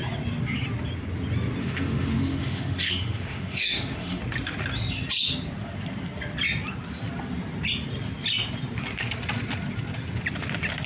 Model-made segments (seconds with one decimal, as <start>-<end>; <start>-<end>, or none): 1.6-4.2